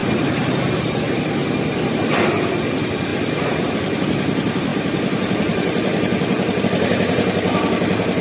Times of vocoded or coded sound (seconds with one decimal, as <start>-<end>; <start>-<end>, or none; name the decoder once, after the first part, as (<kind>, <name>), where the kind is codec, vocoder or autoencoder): 0.0-0.6 (vocoder, BigVGAN v2); 1.4-2.3; 4.7-6.6

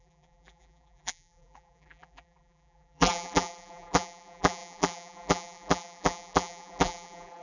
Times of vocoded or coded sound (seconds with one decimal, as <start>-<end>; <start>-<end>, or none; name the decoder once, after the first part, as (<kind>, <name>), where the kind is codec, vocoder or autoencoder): 0.0-7.4 (vocoder, BigVGAN v2)

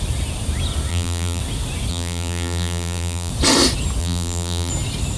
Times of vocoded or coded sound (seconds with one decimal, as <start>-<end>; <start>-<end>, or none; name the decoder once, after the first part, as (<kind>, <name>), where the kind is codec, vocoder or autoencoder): 0.9-1.4 (vocoder, BigVGAN v2); 1.9-3.3; 4.0-4.7

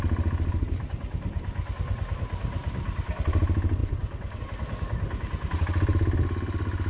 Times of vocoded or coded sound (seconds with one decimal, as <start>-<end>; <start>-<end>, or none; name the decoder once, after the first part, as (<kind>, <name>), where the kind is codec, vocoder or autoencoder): 2.6-3.4 (vocoder, BigVGAN v2)